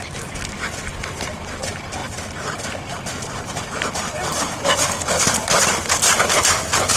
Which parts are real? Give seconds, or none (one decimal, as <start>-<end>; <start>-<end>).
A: 0.0-7.0